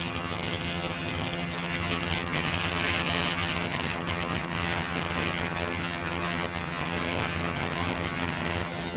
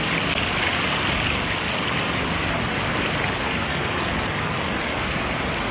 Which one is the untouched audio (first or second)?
second